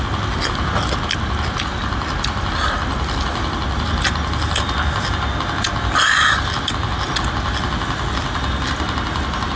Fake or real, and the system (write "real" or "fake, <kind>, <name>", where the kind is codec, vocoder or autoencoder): real